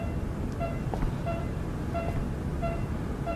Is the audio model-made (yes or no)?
no